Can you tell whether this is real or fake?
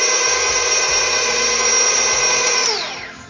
real